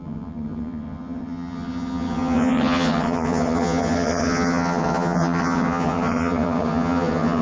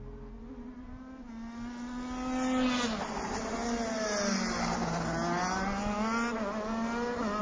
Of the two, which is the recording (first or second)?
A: second